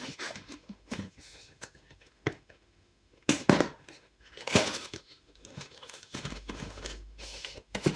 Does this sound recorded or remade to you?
remade